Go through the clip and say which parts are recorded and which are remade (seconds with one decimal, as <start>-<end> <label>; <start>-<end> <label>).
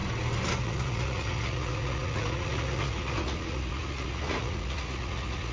0.0-0.6 recorded; 0.6-5.5 remade